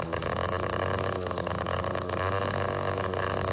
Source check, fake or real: fake